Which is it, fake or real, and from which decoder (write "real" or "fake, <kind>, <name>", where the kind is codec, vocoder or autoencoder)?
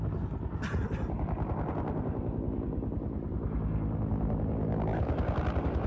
real